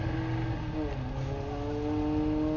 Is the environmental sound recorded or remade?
recorded